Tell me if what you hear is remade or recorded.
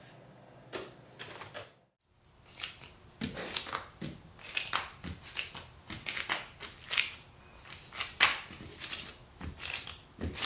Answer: recorded